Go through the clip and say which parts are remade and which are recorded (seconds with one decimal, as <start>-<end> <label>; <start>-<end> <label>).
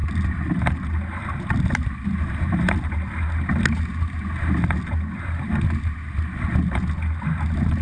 0.0-2.7 remade; 2.7-7.8 recorded